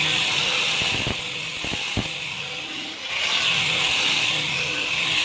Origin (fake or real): real